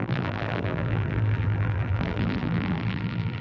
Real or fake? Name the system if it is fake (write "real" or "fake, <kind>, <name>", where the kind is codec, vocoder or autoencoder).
fake, vocoder, BigVGAN v2